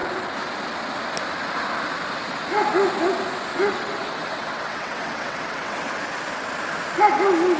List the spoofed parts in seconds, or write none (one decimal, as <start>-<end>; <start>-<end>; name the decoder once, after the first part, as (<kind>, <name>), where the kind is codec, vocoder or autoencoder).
3.5-5.9 (vocoder, WaveNeXt)